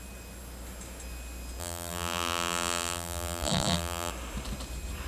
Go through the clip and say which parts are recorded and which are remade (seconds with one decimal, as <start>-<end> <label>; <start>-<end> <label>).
0.0-1.6 recorded; 1.6-4.1 remade; 4.1-5.1 recorded